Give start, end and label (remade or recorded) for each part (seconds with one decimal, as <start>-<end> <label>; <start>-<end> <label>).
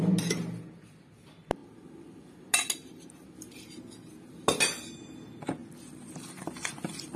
0.0-7.2 recorded